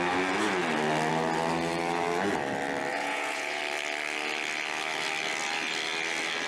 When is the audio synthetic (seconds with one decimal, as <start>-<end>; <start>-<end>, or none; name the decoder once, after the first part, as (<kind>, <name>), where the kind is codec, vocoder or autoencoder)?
2.9-3.6 (vocoder, Vocos)